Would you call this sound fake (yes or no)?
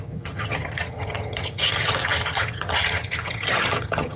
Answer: yes